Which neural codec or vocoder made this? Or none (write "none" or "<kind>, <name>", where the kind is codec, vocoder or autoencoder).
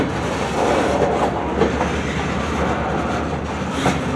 none